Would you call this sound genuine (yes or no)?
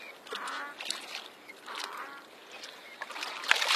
yes